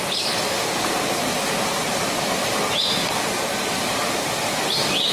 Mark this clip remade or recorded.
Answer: recorded